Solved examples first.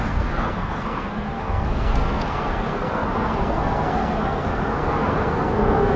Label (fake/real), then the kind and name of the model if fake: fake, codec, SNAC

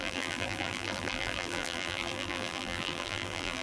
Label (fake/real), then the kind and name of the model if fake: fake, vocoder, BigVGAN v2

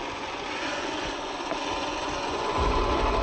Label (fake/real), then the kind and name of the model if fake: fake, vocoder, Vocos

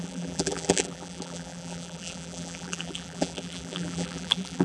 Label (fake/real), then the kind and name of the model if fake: fake, vocoder, BigVGAN v2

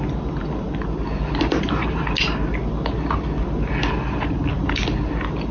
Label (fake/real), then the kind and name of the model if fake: real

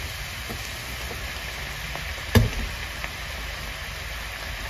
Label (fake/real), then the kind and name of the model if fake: real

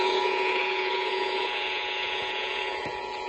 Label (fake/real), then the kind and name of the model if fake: fake, vocoder, Vocos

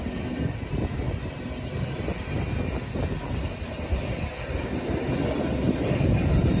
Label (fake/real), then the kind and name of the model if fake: real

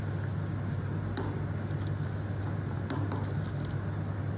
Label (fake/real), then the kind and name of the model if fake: real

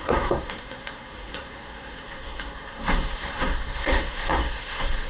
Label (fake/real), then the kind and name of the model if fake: fake, codec, SNAC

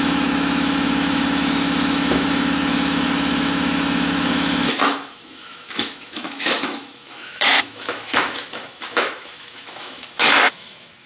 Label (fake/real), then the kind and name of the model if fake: fake, autoencoder, DAC-VAE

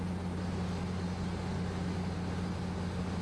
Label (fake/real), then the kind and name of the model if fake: real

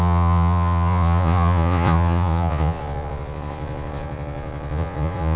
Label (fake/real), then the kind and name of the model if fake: fake, vocoder, Vocos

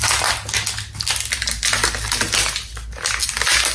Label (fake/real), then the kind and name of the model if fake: real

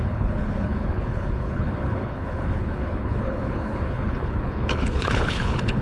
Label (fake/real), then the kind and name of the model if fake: fake, codec, HILCodec